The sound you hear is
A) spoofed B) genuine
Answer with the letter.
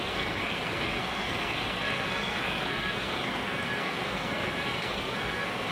A